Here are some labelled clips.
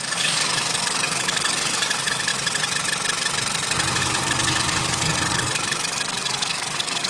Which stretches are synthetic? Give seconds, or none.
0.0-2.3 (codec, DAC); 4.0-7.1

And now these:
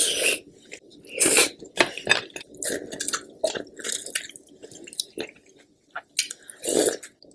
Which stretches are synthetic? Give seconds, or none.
none

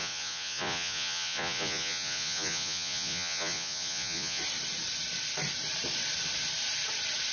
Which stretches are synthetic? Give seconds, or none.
0.0-4.4 (vocoder, Vocos)

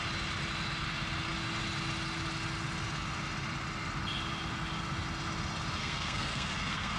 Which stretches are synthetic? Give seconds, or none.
5.8-7.0 (codec, SNAC)

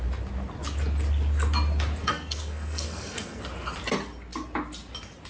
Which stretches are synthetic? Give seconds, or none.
2.0-3.4 (codec, SNAC)